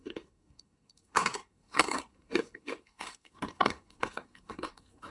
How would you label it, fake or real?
fake